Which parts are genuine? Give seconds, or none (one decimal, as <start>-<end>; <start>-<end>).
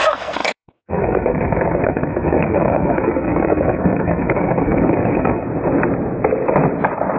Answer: 5.5-7.2